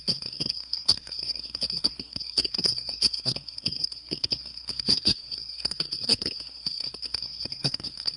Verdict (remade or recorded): remade